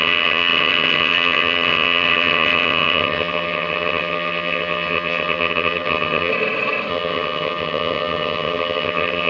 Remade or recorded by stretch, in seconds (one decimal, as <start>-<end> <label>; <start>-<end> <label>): 0.0-6.3 remade; 6.3-6.9 recorded; 6.9-9.3 remade

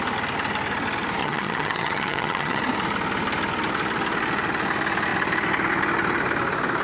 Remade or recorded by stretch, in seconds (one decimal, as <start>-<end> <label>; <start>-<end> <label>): 0.0-1.2 recorded; 1.2-2.6 remade; 2.6-6.8 recorded

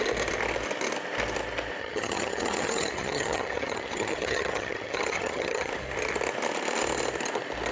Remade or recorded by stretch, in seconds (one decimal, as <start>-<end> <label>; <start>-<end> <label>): 0.0-1.8 recorded; 1.8-5.7 remade; 5.7-7.7 recorded

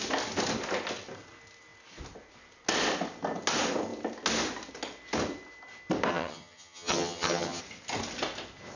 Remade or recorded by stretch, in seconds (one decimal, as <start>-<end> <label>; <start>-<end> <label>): 0.0-6.1 recorded; 6.1-7.6 remade; 7.6-8.8 recorded

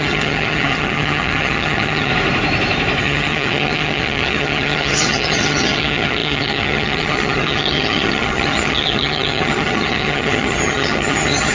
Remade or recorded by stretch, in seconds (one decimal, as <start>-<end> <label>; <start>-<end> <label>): 0.0-2.1 remade; 2.1-3.0 recorded; 3.0-11.5 remade

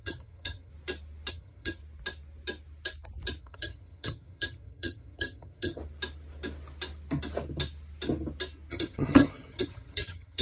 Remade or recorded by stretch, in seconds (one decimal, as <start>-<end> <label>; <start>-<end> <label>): 0.0-0.7 remade; 0.7-1.3 recorded; 1.3-1.8 remade; 1.8-3.4 recorded; 3.4-5.8 remade; 5.8-8.7 recorded; 8.7-10.4 remade

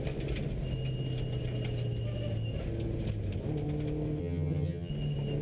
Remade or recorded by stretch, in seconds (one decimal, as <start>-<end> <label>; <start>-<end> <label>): 0.0-4.2 recorded; 4.2-4.9 remade; 4.9-5.4 recorded